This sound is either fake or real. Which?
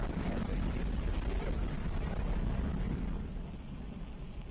real